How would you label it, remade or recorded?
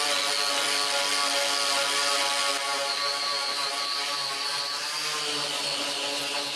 recorded